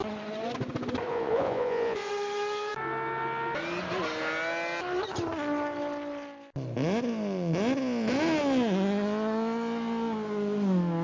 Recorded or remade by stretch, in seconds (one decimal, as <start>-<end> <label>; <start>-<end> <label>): 0.0-1.1 recorded; 1.1-2.1 remade; 2.1-11.0 recorded